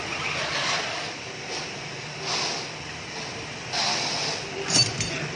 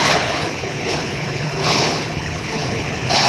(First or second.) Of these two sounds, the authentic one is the first